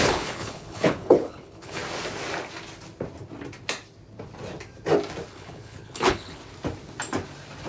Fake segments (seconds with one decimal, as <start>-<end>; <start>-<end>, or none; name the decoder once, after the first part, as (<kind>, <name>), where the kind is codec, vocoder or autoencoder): 0.0-1.8 (codec, HILCodec); 5.3-6.4